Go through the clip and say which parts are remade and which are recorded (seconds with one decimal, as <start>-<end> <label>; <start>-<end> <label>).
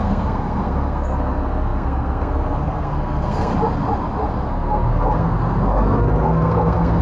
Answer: 0.0-3.5 remade; 3.5-4.3 recorded; 4.3-7.0 remade